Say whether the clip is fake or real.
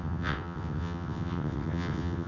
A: fake